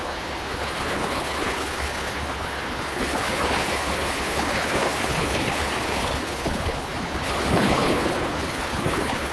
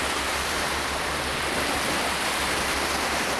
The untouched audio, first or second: second